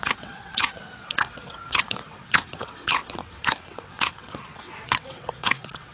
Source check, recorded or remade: remade